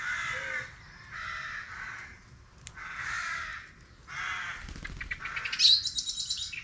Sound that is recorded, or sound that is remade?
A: recorded